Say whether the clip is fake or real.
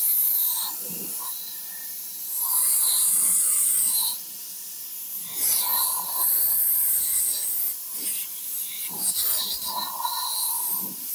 real